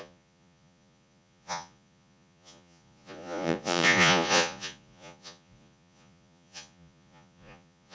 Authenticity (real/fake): fake